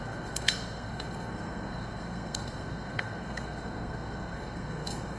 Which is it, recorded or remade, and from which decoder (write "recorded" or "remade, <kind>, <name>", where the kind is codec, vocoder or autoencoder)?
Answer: remade, codec, SNAC